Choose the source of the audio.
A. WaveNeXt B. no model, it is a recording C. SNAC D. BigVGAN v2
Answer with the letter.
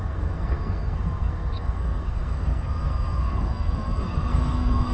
C